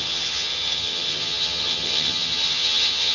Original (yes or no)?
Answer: no